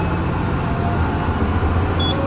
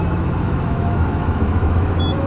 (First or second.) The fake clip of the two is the second